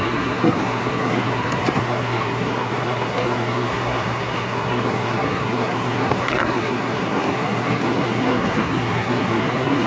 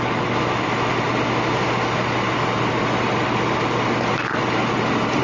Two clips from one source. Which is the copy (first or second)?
first